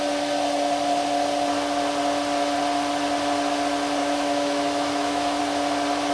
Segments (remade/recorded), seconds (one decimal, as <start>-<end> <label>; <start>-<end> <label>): 0.0-4.0 recorded; 4.0-5.4 remade; 5.4-6.1 recorded